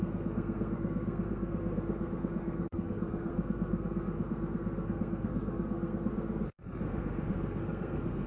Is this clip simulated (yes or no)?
yes